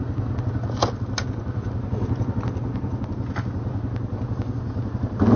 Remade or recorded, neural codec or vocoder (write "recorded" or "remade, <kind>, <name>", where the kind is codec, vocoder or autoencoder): recorded